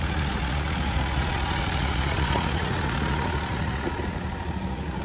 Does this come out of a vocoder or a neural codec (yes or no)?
yes